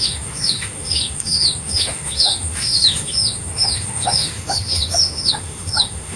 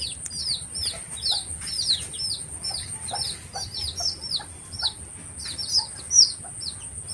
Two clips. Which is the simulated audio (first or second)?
first